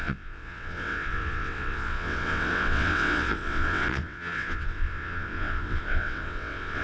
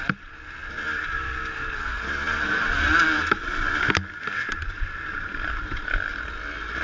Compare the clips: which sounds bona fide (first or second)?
second